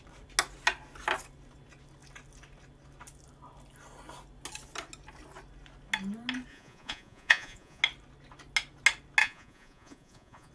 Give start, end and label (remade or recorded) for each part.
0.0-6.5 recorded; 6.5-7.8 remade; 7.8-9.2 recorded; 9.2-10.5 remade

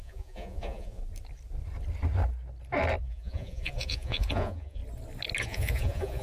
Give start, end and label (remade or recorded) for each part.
0.0-1.0 remade; 1.0-3.0 recorded; 3.0-4.8 remade; 4.8-5.4 recorded; 5.4-6.2 remade

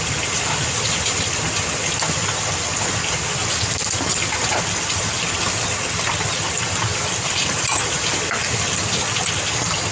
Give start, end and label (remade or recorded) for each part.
0.0-9.9 recorded

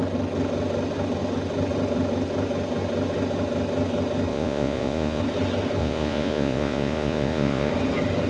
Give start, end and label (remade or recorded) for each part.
0.0-4.3 recorded; 4.3-5.2 remade; 5.2-5.8 recorded; 5.8-7.7 remade; 7.7-8.3 recorded

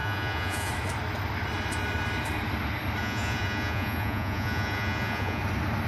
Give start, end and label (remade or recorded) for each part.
0.0-0.7 remade; 0.7-3.0 recorded; 3.0-5.4 remade; 5.4-5.9 recorded

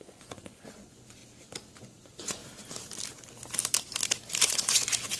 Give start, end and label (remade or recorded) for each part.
0.0-1.2 remade; 1.2-1.8 recorded; 1.8-2.4 remade; 2.4-4.5 recorded; 4.5-5.2 remade